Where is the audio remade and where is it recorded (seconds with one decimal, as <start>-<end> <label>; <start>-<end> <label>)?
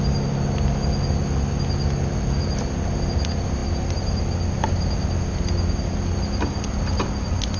0.0-7.6 recorded